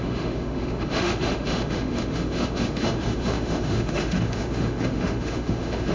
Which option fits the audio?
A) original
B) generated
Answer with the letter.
B